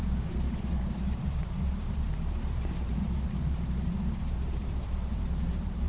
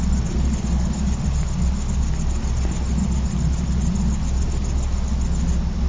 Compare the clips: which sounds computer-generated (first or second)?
first